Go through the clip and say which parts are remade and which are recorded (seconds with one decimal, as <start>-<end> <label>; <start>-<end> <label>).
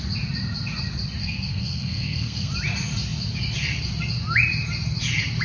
0.0-1.2 recorded; 1.2-2.5 remade; 2.5-5.4 recorded